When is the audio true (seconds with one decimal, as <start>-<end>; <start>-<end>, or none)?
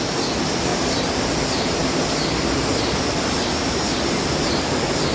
0.0-5.1